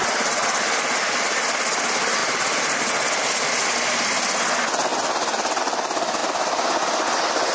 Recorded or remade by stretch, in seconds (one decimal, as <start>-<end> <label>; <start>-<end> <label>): 0.0-2.2 recorded; 2.2-2.9 remade; 2.9-7.5 recorded